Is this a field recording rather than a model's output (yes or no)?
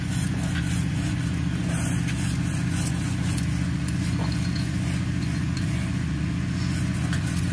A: no